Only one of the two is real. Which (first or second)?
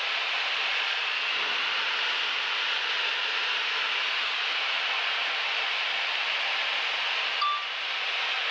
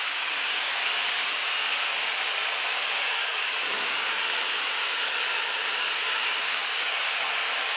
first